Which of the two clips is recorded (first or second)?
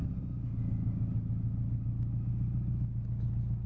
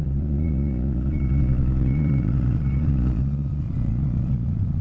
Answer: first